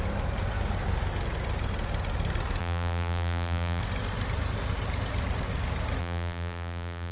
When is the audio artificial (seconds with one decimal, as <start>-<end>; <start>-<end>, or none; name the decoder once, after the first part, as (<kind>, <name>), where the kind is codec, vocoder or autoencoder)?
2.6-3.8 (vocoder, BigVGAN v2); 6.0-7.1

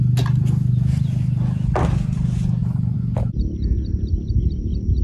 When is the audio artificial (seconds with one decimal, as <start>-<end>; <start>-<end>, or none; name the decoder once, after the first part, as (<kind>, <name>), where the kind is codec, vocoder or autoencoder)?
none

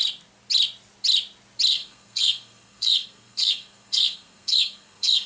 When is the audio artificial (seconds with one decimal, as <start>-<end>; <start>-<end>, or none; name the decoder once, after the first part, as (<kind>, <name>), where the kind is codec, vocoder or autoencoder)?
1.7-5.3 (codec, SNAC)

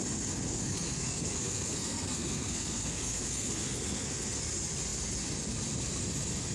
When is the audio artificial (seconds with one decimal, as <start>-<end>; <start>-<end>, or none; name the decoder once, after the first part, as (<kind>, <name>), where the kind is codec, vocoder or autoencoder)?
0.5-4.4 (codec, SNAC)

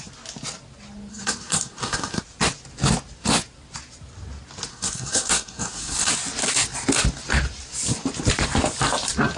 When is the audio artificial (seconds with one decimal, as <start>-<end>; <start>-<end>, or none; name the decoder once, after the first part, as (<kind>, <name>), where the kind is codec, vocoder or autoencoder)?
1.1-2.2 (codec, SNAC); 4.7-6.1

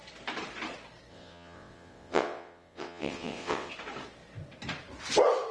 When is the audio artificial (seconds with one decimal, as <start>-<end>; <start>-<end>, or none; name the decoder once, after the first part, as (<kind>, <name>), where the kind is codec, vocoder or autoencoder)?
1.1-3.7 (vocoder, WaveNeXt)

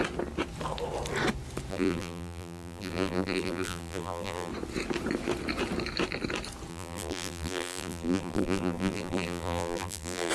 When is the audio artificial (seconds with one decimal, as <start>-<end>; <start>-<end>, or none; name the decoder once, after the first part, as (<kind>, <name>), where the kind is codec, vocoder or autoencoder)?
1.7-4.5 (vocoder, BigVGAN v2); 6.7-10.3

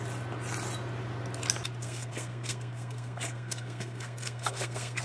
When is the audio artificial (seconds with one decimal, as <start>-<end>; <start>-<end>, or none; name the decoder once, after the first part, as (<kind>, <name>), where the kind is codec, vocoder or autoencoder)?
1.8-5.0 (codec, SNAC)